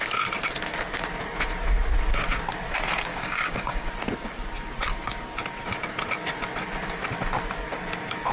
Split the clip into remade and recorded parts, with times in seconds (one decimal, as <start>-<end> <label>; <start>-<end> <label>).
0.0-3.1 recorded; 3.1-3.9 remade; 3.9-8.3 recorded